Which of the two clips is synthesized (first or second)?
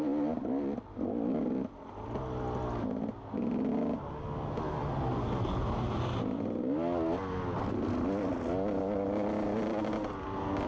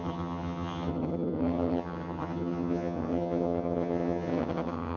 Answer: second